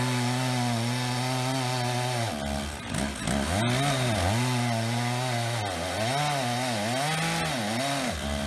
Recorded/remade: recorded